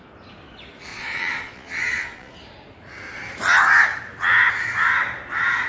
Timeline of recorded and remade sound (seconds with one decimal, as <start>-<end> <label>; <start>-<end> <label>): 0.0-0.9 recorded; 0.9-2.3 remade; 2.3-5.7 recorded

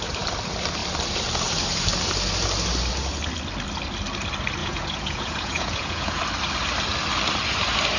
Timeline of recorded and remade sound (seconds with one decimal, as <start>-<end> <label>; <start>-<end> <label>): 0.0-4.6 recorded; 4.6-6.2 remade; 6.2-8.0 recorded